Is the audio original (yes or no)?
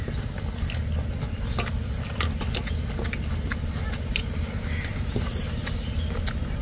yes